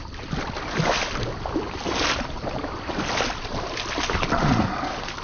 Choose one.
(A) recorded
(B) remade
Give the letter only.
A